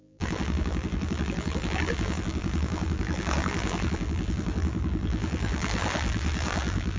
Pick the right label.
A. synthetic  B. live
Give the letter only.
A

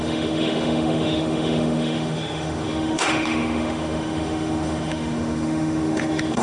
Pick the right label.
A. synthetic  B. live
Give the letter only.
A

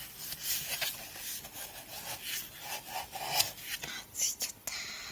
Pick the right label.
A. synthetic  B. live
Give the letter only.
B